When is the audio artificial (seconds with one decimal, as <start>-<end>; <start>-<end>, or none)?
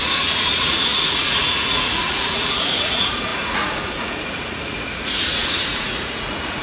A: 0.0-6.6